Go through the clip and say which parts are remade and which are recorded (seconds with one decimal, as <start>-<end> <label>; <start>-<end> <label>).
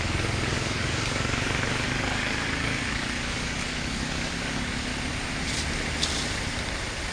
0.0-4.9 remade; 4.9-7.1 recorded